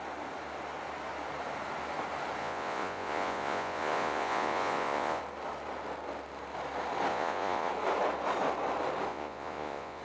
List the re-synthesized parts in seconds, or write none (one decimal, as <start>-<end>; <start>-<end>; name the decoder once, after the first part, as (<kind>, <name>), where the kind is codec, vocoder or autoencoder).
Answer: 2.4-5.2 (vocoder, Vocos); 7.1-7.7; 9.1-10.0